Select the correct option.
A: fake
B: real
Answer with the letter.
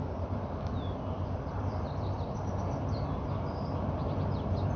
B